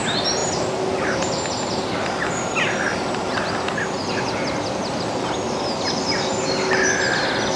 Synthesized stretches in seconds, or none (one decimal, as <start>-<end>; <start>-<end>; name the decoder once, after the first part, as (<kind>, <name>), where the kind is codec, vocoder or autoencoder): none

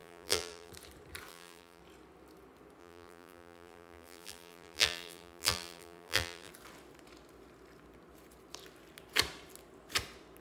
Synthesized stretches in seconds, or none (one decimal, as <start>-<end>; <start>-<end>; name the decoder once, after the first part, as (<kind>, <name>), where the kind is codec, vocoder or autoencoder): 0.0-0.7 (vocoder, BigVGAN v2); 1.3-1.8; 2.8-6.5

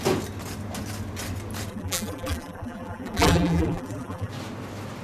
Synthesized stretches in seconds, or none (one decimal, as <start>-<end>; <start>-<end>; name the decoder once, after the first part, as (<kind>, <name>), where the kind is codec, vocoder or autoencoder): 1.7-4.3 (vocoder, BigVGAN v2)